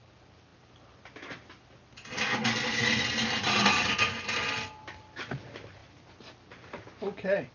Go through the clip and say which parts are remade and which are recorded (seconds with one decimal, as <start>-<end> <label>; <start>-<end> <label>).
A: 0.0-7.5 recorded